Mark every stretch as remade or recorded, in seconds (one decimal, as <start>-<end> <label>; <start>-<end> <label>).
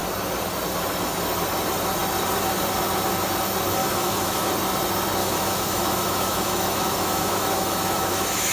0.0-3.8 recorded; 3.8-4.5 remade; 4.5-5.2 recorded; 5.2-8.5 remade